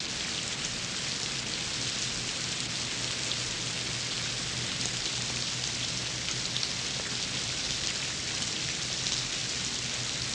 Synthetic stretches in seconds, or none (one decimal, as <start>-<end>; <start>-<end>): none